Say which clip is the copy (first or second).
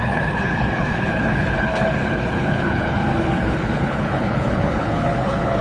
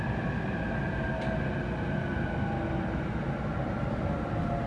first